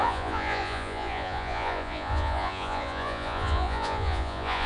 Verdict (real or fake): fake